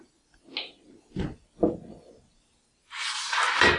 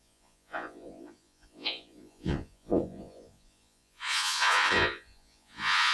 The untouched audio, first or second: first